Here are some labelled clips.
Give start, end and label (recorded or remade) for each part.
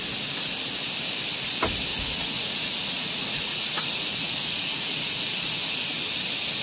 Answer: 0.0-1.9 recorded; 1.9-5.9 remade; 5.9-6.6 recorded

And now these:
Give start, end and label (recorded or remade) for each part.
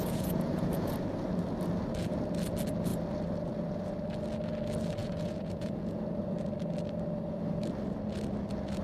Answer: 0.0-0.9 remade; 0.9-5.0 recorded; 5.0-6.0 remade; 6.0-8.8 recorded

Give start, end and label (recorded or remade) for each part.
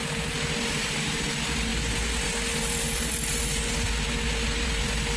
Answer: 0.0-5.2 recorded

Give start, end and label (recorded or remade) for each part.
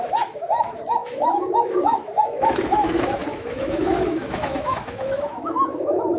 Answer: 0.0-6.2 remade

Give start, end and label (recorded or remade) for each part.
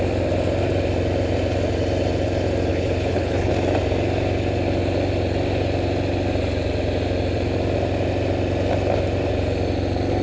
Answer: 0.0-2.7 recorded; 2.7-3.5 remade; 3.5-10.2 recorded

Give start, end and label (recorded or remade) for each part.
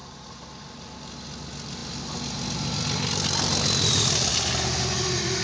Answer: 0.0-0.5 remade; 0.5-5.4 recorded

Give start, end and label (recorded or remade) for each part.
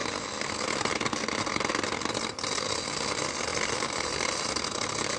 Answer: 0.0-3.5 recorded; 3.5-5.2 remade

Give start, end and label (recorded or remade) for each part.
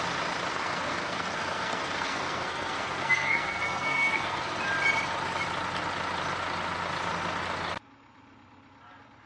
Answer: 0.0-0.5 recorded; 0.5-4.6 remade; 4.6-9.3 recorded